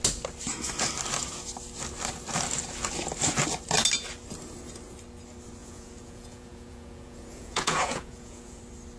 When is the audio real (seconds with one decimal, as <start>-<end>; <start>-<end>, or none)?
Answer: 0.0-5.6; 8.6-9.0